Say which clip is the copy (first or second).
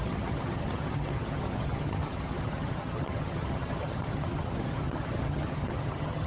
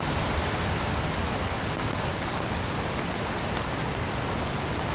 first